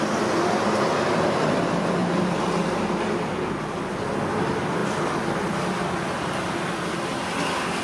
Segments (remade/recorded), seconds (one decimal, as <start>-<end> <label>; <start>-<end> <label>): 0.0-2.0 recorded; 2.0-3.1 remade; 3.1-7.8 recorded

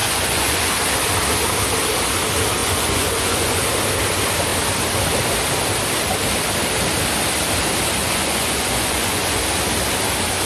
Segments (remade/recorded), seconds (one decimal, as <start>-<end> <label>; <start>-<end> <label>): 0.0-0.7 remade; 0.7-2.6 recorded; 2.6-3.6 remade; 3.6-8.0 recorded; 8.0-9.4 remade; 9.4-10.5 recorded